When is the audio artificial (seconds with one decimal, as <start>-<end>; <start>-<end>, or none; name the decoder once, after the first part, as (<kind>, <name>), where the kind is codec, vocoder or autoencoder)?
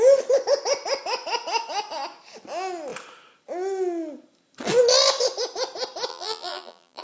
6.1-7.0 (vocoder, BigVGAN v2)